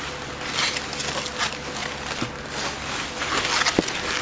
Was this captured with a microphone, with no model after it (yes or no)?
yes